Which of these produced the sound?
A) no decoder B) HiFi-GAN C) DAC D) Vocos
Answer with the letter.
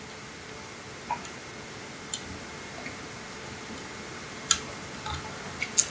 A